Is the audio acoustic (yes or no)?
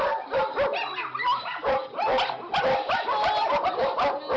yes